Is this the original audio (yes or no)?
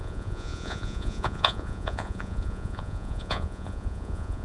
no